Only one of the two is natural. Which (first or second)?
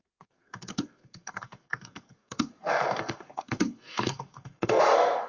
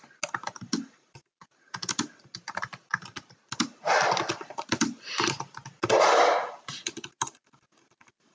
second